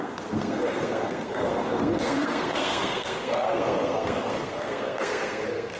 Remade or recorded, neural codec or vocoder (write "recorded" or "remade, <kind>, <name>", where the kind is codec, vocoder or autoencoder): remade, codec, SNAC